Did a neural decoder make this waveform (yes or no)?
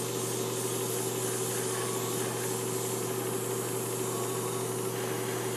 no